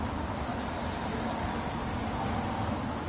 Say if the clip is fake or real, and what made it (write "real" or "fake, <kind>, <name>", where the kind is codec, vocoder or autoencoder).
real